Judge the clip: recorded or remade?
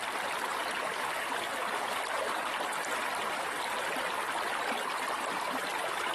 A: recorded